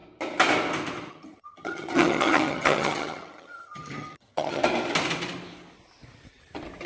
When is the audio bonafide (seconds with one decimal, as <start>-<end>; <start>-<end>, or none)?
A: 0.0-1.1; 4.6-6.9